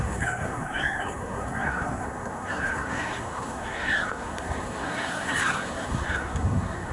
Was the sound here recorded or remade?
remade